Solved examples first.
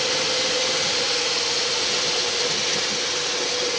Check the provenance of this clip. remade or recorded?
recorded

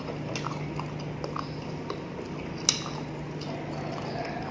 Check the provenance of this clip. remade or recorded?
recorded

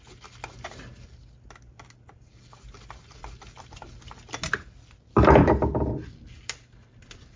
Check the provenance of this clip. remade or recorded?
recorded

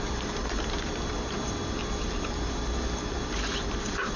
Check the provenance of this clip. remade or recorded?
remade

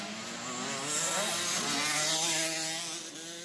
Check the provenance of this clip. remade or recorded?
recorded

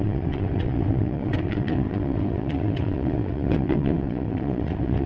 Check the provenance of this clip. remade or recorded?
remade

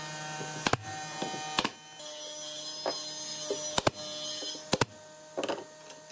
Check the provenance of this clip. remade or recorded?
recorded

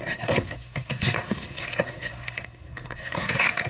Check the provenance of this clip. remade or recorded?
remade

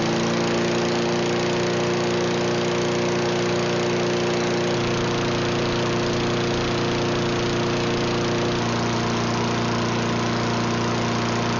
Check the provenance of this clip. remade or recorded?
recorded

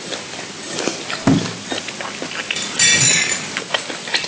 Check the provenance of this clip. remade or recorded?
recorded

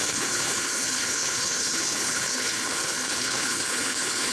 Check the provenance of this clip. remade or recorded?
remade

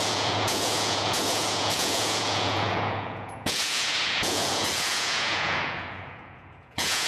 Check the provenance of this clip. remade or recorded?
remade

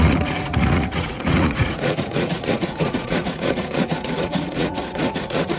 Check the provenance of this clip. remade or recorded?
remade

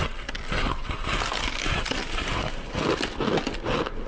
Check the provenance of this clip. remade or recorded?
recorded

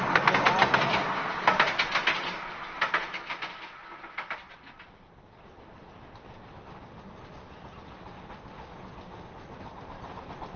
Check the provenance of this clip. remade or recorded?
recorded